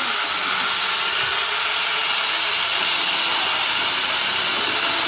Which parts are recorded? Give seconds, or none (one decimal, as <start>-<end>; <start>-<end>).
0.0-5.1